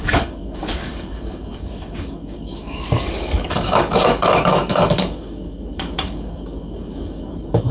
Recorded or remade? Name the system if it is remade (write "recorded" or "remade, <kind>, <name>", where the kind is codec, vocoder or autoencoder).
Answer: remade, codec, DAC